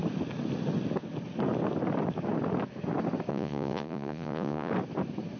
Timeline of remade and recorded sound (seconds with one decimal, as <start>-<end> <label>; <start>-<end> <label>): 0.0-3.3 recorded; 3.3-4.7 remade; 4.7-5.4 recorded